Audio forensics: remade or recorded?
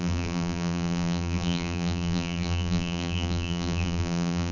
remade